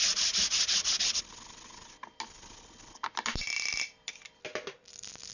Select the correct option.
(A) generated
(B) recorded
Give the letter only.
B